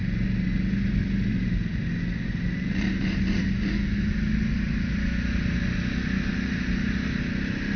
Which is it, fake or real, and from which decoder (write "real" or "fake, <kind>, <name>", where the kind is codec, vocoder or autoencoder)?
real